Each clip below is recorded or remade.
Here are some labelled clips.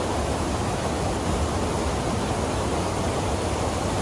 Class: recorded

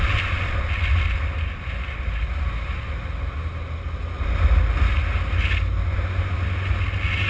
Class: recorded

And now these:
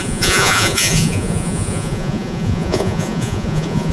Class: remade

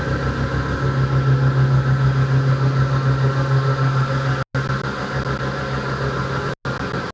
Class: recorded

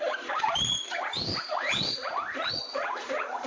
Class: remade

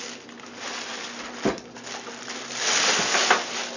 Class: recorded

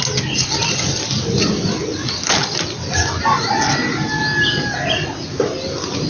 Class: recorded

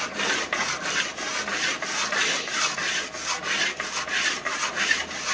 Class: recorded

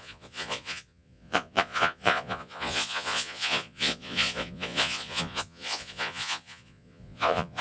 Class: remade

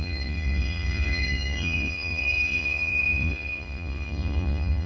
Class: remade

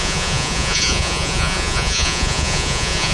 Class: remade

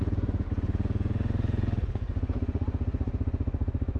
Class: remade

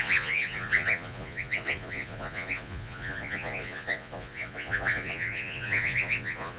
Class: remade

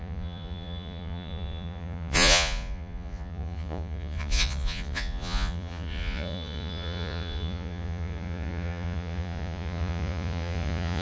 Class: remade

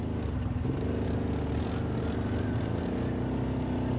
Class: recorded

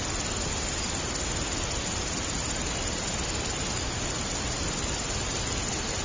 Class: recorded